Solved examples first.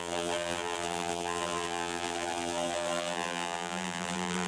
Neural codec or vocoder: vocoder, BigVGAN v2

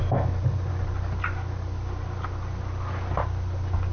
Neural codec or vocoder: none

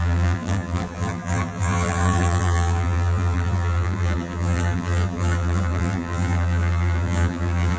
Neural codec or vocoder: vocoder, BigVGAN v2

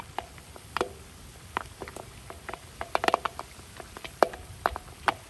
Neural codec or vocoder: none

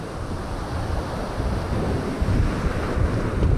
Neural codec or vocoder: none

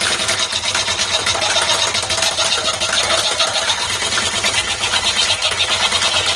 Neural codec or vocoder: none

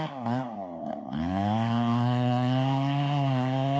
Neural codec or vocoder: codec, SNAC